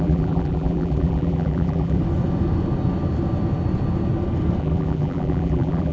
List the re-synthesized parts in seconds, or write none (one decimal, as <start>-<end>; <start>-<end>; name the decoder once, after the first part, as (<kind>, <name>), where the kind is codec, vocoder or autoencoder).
0.0-2.0 (vocoder, BigVGAN v2); 4.6-5.9